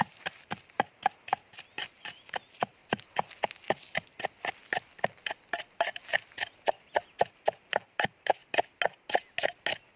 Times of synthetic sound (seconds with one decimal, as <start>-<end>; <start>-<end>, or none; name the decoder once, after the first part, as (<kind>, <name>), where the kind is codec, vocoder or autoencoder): 0.0-2.8 (vocoder, BigVGAN v2); 7.2-8.4